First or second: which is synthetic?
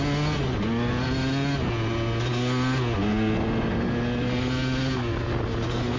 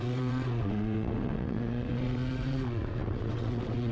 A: second